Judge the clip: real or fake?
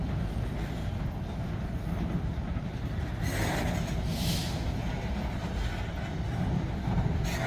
real